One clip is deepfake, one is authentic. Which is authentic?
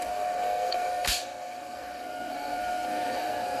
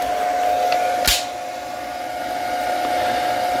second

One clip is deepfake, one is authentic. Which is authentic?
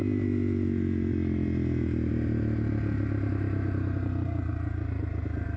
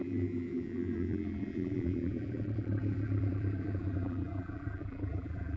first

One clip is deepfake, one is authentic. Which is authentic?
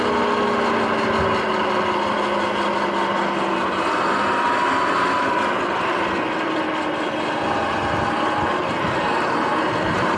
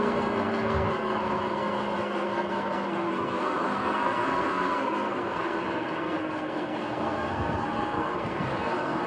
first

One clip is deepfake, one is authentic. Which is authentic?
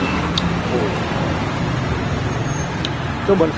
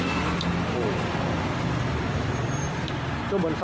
second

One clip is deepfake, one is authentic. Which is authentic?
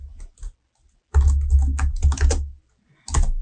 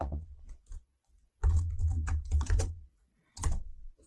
first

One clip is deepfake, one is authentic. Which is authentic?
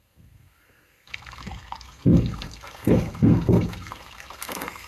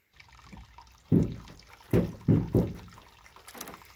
second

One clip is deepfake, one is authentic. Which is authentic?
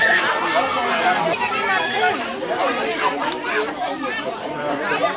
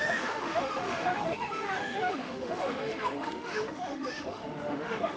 first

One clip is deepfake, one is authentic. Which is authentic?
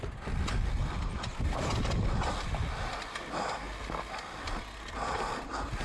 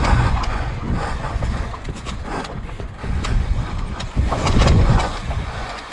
first